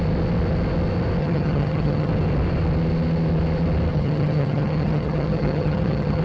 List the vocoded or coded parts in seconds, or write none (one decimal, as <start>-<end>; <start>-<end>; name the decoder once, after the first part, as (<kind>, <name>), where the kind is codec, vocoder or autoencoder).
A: 1.2-2.1 (vocoder, HiFi-GAN); 3.9-6.2